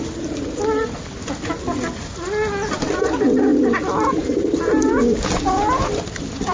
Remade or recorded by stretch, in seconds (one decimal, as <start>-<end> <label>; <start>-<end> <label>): 0.0-6.5 recorded